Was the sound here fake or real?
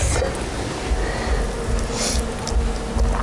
real